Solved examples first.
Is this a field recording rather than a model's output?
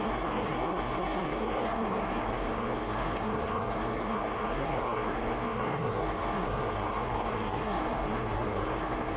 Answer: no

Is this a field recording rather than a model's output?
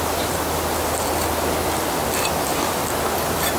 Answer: yes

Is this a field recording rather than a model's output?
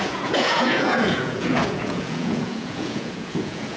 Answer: no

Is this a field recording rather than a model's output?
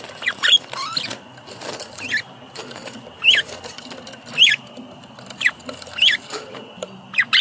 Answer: no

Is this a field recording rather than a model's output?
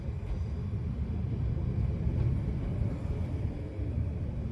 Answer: yes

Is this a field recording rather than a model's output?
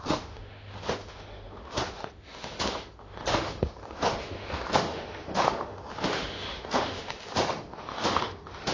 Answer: no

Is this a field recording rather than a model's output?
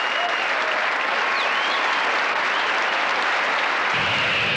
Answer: yes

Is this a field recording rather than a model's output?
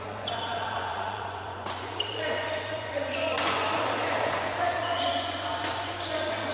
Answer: no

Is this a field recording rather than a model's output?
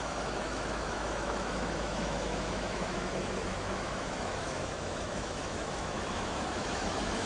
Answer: no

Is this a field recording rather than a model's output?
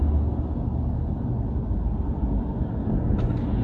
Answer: yes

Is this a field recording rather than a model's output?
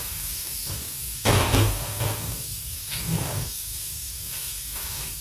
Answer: no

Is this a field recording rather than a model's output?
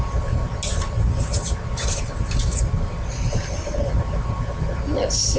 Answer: yes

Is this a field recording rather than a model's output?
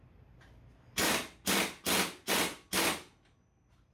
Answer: yes